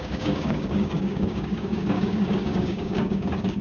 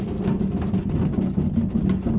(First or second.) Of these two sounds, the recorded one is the second